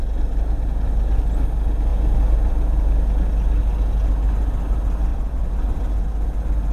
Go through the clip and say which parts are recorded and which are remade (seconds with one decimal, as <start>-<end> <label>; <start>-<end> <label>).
0.0-5.1 recorded; 5.1-5.8 remade; 5.8-6.7 recorded

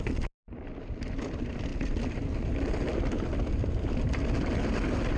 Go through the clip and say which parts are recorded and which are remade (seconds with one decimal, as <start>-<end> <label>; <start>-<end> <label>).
0.0-5.2 recorded

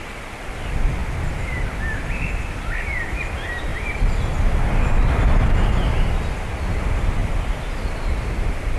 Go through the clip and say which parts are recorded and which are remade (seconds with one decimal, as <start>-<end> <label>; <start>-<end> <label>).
0.0-1.0 remade; 1.0-2.6 recorded; 2.6-3.7 remade; 3.7-5.9 recorded; 5.9-7.2 remade; 7.2-7.9 recorded; 7.9-8.8 remade

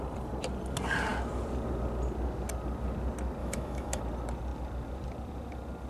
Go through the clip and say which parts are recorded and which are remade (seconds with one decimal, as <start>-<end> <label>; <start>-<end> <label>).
0.0-3.4 recorded; 3.4-4.0 remade; 4.0-5.9 recorded

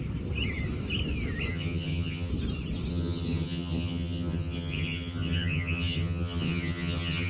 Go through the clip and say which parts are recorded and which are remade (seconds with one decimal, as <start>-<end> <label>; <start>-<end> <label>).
0.0-1.5 recorded; 1.5-2.3 remade; 2.3-2.9 recorded; 2.9-7.3 remade

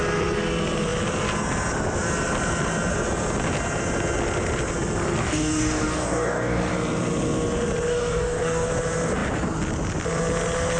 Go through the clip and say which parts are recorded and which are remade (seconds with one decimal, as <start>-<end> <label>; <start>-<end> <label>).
0.0-5.2 recorded; 5.2-6.6 remade; 6.6-7.9 recorded; 7.9-8.7 remade; 8.7-10.8 recorded